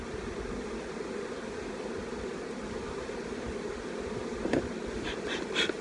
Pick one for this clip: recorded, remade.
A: recorded